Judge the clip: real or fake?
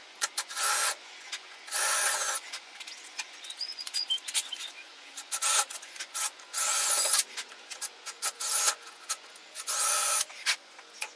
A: fake